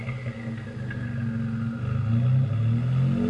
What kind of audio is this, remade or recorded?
recorded